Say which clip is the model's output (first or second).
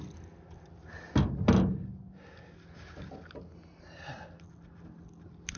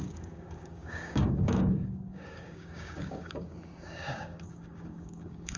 second